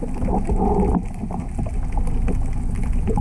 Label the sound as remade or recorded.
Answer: recorded